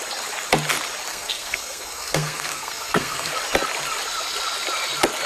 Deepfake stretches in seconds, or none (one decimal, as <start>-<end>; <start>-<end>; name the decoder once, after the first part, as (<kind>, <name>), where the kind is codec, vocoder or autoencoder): 1.1-3.3 (codec, SNAC)